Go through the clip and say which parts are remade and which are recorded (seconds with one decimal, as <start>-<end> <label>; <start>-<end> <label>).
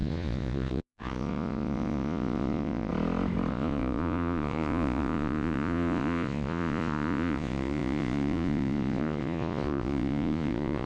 0.0-2.9 remade; 2.9-3.5 recorded; 3.5-10.9 remade